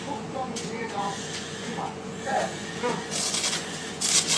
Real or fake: fake